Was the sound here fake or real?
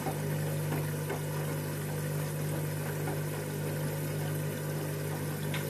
real